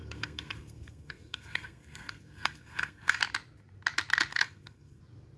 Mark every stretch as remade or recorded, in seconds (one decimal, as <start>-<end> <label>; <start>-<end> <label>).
0.0-3.2 remade; 3.2-4.3 recorded; 4.3-5.0 remade; 5.0-5.4 recorded